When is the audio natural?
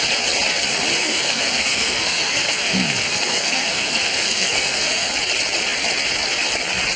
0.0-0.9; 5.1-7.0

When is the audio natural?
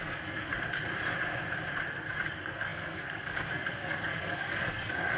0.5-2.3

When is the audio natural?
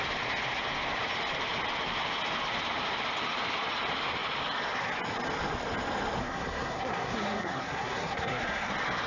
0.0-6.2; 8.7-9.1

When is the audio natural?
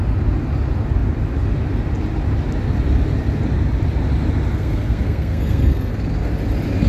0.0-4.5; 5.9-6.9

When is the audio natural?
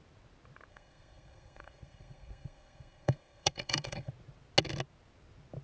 0.0-0.7; 4.1-5.6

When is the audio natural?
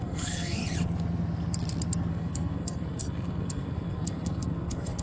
0.6-2.1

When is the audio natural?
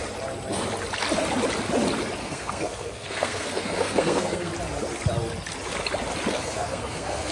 0.0-2.2; 4.5-6.3